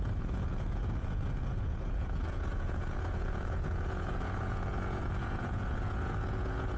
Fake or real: fake